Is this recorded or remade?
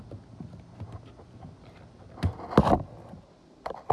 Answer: recorded